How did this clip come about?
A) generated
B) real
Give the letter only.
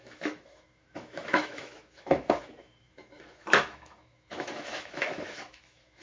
A